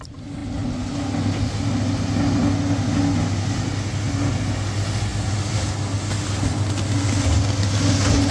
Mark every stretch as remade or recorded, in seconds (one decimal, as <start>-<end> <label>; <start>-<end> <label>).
0.0-8.3 recorded